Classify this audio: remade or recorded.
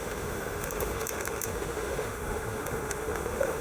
remade